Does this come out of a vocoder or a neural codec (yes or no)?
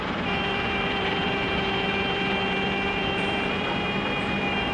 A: yes